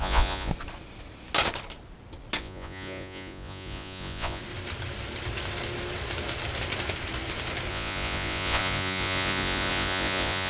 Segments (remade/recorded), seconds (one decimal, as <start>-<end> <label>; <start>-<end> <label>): 0.0-0.5 remade; 0.5-2.4 recorded; 2.4-4.4 remade; 4.4-7.7 recorded; 7.7-10.5 remade